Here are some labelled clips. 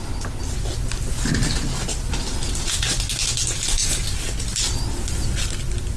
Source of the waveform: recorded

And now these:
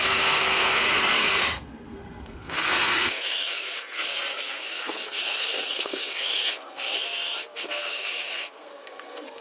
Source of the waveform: remade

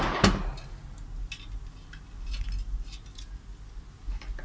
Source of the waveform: recorded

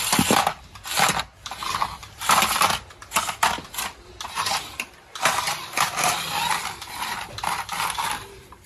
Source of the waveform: recorded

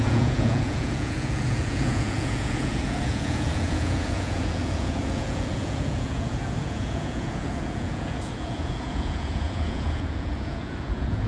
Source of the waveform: remade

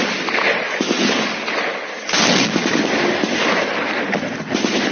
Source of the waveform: recorded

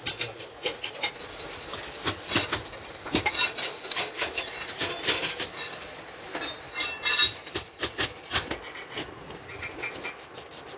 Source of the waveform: recorded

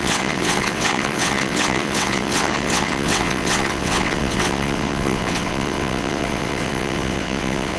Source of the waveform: remade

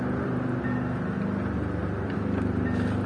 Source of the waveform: recorded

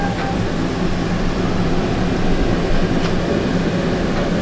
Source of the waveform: recorded